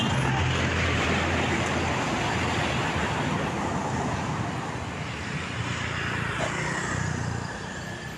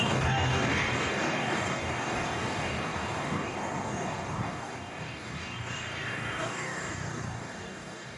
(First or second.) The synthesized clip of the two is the second